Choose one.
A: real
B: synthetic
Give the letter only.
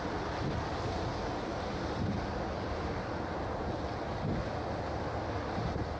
A